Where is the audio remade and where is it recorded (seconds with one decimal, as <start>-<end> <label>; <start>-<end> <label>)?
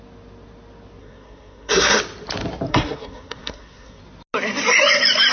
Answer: 0.0-1.0 recorded; 1.0-2.0 remade; 2.0-2.7 recorded; 2.7-4.0 remade; 4.0-5.3 recorded